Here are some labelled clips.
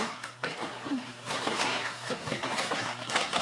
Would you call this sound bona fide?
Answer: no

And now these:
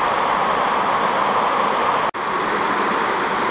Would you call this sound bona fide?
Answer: yes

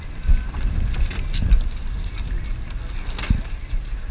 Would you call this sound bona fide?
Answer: yes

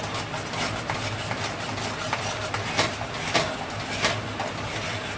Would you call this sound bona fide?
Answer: yes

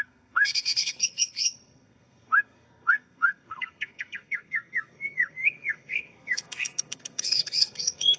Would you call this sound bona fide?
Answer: no